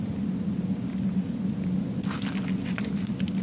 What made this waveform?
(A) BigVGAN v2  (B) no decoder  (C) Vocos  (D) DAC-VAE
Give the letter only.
B